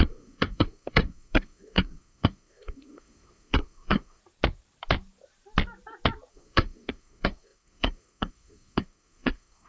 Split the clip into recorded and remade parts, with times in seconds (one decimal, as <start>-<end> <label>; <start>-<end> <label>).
0.0-4.2 remade; 4.2-6.3 recorded; 6.3-9.7 remade